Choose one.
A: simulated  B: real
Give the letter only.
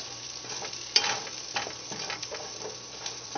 A